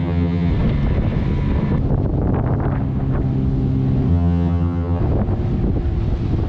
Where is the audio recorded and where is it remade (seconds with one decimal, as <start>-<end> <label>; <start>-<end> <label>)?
0.0-0.5 remade; 0.5-4.1 recorded; 4.1-5.0 remade; 5.0-6.5 recorded